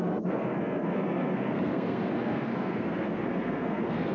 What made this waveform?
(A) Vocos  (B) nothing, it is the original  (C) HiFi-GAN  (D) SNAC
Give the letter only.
D